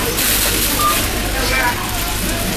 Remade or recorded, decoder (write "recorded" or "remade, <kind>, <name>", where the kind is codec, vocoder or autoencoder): recorded